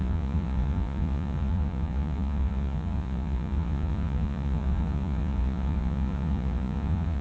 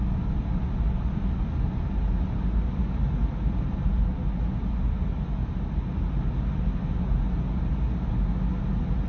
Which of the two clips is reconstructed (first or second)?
first